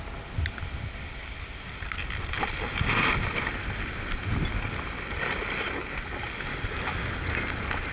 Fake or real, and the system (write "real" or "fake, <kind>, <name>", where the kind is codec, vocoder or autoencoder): real